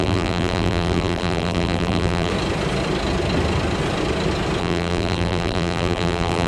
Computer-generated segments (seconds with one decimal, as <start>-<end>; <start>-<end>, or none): 0.0-2.3; 4.6-6.5